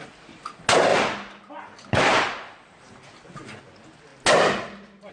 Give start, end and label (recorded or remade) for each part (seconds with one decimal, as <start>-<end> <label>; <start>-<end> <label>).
0.0-0.9 recorded; 0.9-3.6 remade; 3.6-5.1 recorded